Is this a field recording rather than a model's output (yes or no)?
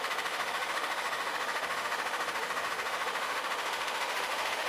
no